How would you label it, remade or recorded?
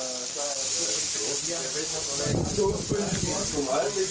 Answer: recorded